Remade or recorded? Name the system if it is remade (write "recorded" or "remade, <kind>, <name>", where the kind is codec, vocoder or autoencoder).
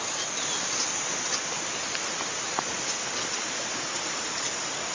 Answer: recorded